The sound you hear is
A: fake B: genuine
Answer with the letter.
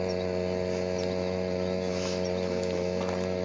B